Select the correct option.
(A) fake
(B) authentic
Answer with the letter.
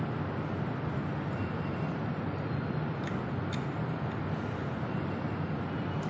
B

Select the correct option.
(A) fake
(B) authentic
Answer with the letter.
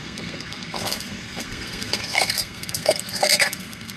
A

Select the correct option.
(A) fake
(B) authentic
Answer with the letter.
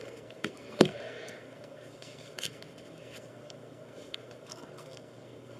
A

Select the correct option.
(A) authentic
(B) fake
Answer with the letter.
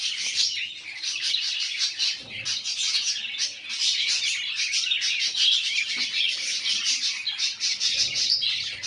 A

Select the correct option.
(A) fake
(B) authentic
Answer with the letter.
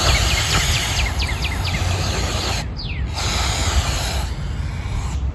B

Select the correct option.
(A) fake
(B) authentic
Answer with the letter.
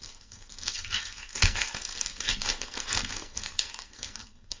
A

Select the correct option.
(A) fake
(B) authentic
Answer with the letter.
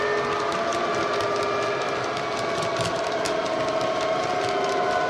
B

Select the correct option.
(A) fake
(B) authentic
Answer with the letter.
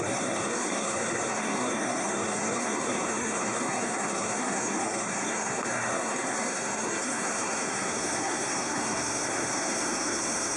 A